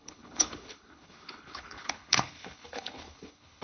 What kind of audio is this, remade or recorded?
remade